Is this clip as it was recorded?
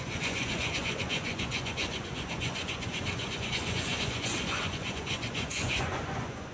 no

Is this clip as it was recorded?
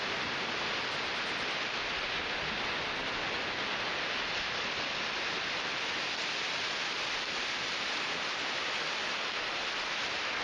yes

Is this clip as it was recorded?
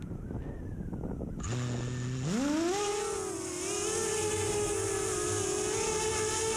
yes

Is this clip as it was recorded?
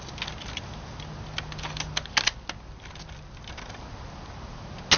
yes